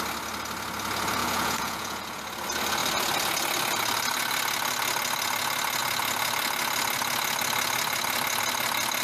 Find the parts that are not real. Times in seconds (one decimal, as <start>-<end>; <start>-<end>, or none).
1.2-2.2